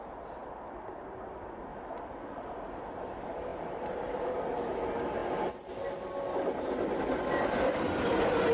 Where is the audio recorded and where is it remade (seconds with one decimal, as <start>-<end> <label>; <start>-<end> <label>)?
0.0-8.5 recorded